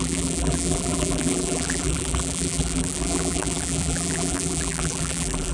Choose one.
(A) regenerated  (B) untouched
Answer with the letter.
A